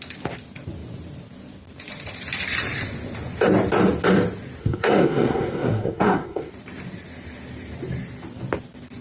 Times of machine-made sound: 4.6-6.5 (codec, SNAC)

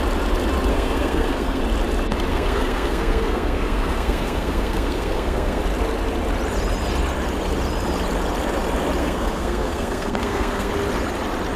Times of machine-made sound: 0.7-1.6 (codec, SNAC); 2.3-5.6; 9.0-10.7

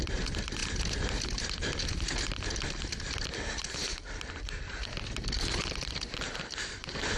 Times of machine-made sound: none